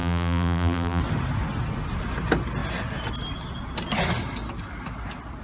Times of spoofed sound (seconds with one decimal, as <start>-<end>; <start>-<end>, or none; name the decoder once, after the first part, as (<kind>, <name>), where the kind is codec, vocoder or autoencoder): 0.0-1.0 (vocoder, BigVGAN v2)